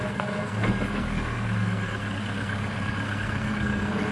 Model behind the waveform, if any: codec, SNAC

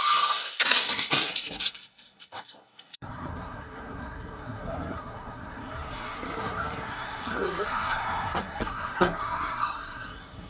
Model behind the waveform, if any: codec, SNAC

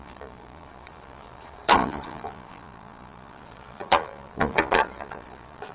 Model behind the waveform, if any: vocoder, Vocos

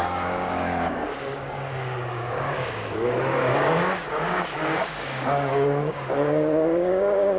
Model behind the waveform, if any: codec, DAC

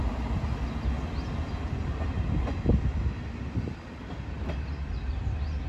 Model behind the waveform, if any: none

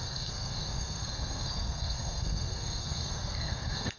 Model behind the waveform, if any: codec, SNAC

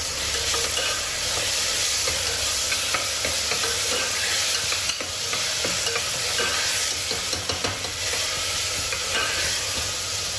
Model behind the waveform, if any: none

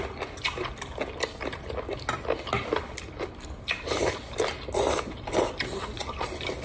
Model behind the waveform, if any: none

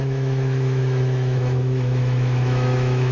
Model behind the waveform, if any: autoencoder, DAC-VAE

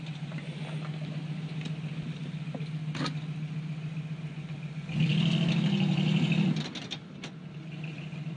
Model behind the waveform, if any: none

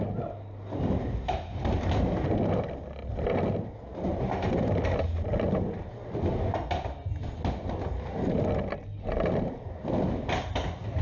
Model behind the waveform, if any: none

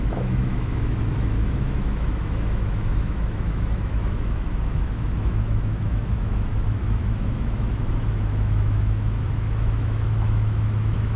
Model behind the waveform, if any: autoencoder, DAC-VAE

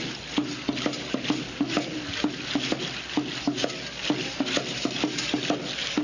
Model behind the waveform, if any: none